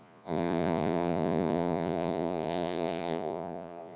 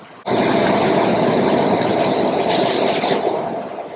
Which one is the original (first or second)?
second